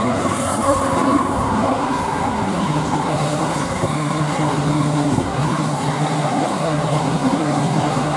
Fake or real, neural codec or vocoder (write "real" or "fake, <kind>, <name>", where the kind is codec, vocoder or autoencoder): fake, codec, SNAC